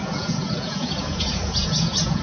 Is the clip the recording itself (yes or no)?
no